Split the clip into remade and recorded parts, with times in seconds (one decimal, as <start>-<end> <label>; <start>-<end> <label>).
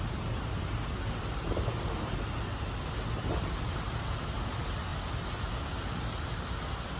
0.0-7.0 recorded